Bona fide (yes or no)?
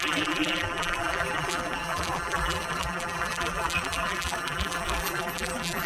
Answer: no